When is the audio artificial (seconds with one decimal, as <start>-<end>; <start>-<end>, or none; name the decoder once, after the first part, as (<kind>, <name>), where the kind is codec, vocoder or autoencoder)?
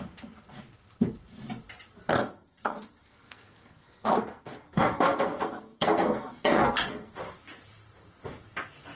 2.1-7.2 (codec, SNAC)